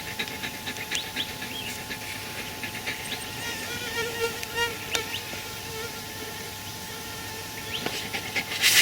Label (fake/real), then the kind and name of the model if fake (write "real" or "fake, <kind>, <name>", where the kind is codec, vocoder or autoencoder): fake, vocoder, BigVGAN v2